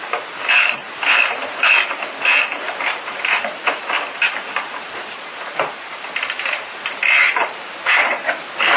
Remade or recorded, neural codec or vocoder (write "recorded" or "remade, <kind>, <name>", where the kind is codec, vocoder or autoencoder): remade, vocoder, BigVGAN v2